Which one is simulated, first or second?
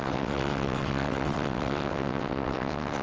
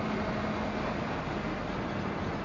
first